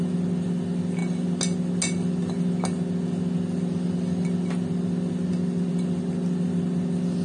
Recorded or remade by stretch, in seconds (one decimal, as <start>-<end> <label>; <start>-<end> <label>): 0.0-7.2 recorded